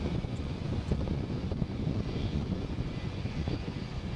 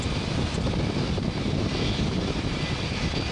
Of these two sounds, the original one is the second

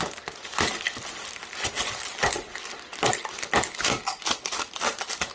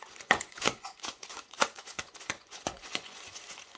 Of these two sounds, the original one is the first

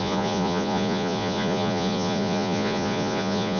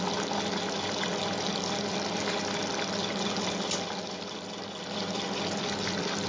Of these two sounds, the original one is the second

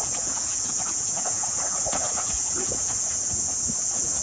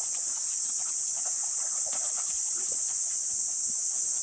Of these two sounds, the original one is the second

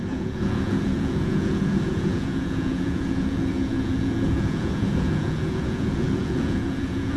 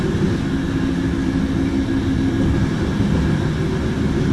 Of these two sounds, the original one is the second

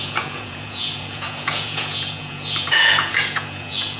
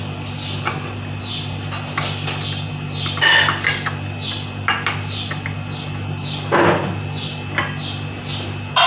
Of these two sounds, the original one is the second